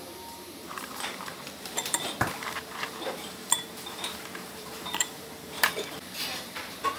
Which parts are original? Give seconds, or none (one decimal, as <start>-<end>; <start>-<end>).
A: none